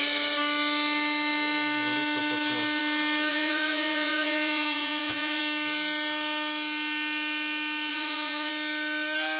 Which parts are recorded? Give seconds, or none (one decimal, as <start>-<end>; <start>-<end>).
0.0-3.3; 5.4-7.9; 8.5-9.4